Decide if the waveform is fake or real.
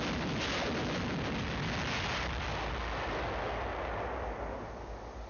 real